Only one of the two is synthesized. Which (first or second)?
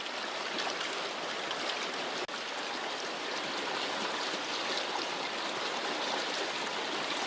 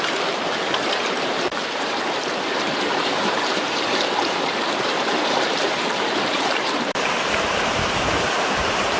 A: second